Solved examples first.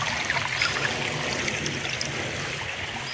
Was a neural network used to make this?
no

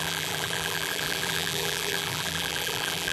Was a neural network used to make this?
yes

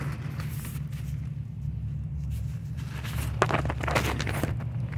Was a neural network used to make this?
no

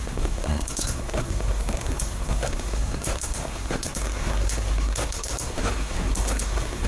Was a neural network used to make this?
yes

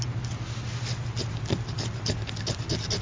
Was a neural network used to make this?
no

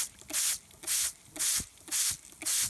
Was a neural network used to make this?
no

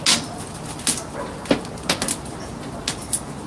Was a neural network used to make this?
no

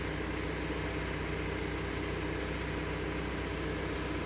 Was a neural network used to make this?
no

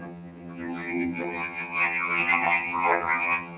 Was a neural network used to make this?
yes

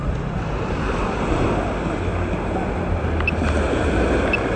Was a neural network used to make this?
no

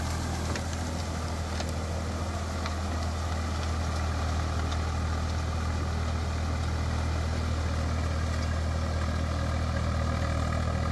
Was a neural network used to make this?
no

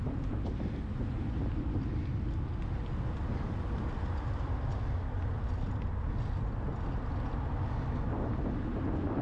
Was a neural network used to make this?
no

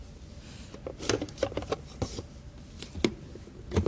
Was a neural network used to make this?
no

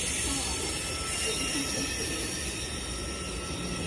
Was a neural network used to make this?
no